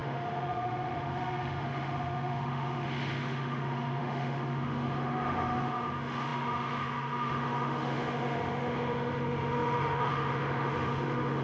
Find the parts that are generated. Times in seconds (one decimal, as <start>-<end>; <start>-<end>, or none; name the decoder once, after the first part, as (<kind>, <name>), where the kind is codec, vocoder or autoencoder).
0.0-11.4 (autoencoder, DAC-VAE)